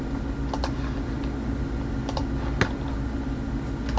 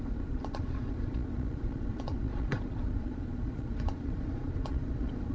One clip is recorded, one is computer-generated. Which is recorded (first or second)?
first